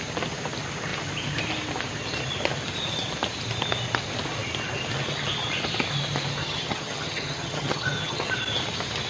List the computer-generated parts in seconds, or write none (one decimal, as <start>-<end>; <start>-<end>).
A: 6.4-8.3